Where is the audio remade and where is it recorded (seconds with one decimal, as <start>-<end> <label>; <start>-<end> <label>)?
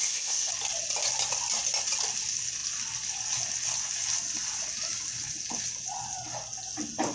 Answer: 0.0-0.5 remade; 0.5-7.1 recorded